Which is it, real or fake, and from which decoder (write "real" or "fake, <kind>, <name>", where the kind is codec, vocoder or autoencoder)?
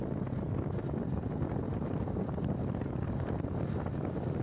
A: real